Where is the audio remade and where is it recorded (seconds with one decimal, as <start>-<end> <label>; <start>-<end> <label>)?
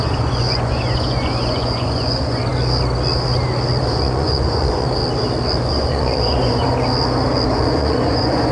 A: 0.0-2.5 remade; 2.5-3.8 recorded; 3.8-5.0 remade; 5.0-5.6 recorded; 5.6-6.7 remade; 6.7-7.5 recorded; 7.5-8.5 remade